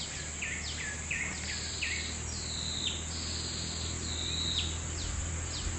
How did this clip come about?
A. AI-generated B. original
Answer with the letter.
B